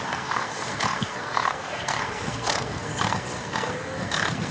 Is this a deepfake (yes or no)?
yes